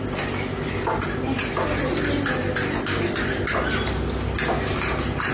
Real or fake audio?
real